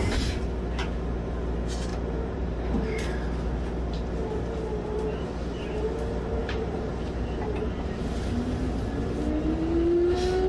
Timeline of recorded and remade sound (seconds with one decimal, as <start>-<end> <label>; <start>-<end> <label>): 0.0-1.9 recorded; 1.9-2.6 remade; 2.6-6.4 recorded; 6.4-6.9 remade; 6.9-10.5 recorded